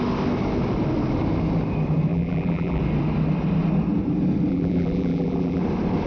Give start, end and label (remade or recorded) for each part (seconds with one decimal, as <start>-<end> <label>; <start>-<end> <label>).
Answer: 0.0-2.1 recorded; 2.1-2.8 remade; 2.8-4.5 recorded; 4.5-5.6 remade; 5.6-6.1 recorded